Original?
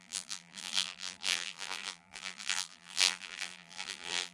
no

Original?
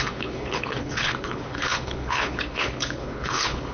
no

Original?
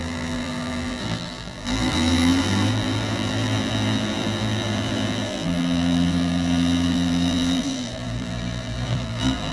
no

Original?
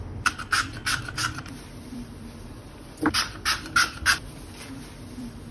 no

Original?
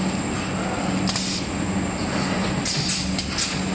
yes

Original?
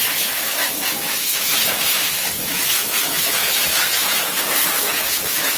no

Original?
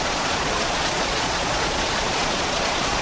no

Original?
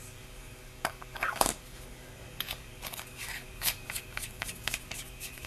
no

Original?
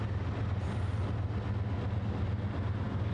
yes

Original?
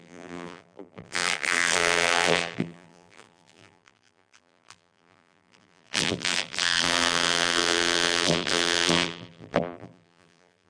no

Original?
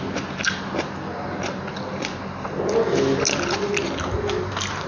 yes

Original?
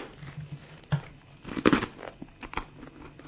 yes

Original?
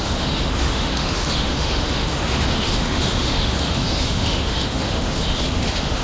no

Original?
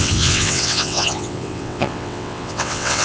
no